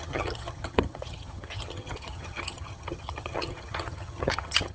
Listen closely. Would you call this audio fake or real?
fake